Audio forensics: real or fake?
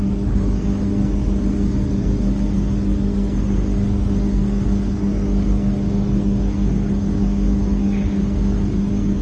fake